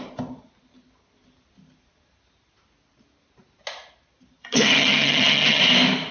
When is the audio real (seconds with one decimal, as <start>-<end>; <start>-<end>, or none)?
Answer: 0.0-4.4; 5.6-6.1